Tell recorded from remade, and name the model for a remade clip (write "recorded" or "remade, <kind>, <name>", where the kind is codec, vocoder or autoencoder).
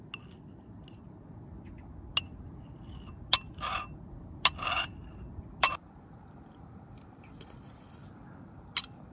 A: recorded